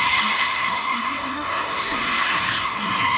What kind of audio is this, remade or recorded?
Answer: remade